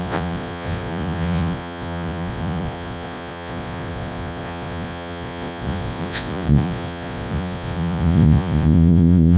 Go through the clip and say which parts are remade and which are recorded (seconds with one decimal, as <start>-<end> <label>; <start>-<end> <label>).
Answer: 0.0-9.4 remade